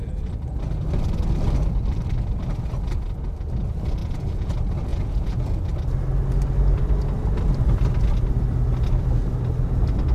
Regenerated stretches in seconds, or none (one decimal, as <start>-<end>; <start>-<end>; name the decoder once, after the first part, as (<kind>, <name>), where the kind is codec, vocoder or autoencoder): 4.0-4.5 (vocoder, Vocos); 4.9-5.5